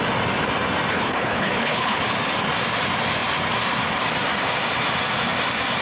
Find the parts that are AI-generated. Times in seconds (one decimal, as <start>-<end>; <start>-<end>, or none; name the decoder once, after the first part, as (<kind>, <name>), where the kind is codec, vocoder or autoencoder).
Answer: 0.9-2.0 (codec, HILCodec)